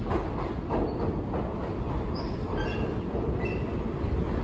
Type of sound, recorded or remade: recorded